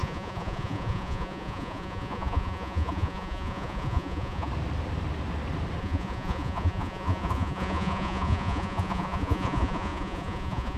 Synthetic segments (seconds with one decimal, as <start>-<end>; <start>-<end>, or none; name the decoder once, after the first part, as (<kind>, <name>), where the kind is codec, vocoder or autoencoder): 0.0-4.5 (vocoder, Vocos); 5.8-10.8